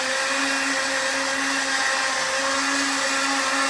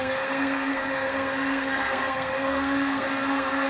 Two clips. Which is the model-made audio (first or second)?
second